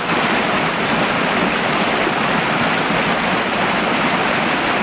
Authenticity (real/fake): real